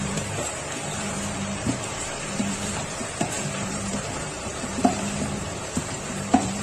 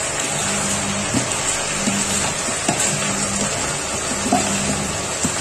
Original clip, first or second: second